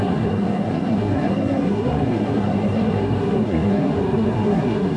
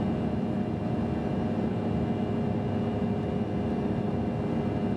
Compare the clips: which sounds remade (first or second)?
first